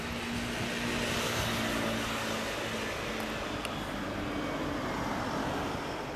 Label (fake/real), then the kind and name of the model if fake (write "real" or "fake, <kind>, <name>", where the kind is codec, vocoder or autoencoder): real